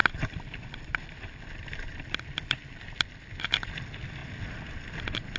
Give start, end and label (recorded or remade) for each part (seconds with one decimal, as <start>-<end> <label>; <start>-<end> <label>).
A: 0.0-3.2 remade; 3.2-4.2 recorded; 4.2-4.7 remade; 4.7-5.4 recorded